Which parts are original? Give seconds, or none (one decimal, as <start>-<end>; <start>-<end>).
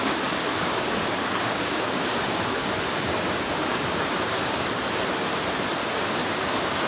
0.0-0.5; 4.6-5.8